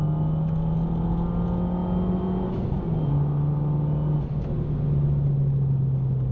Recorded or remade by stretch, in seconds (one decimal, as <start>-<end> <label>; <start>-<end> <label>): 0.0-6.3 recorded